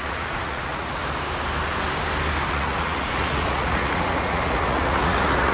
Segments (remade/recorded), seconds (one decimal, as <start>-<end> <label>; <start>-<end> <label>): 0.0-1.0 remade; 1.0-2.5 recorded; 2.5-5.5 remade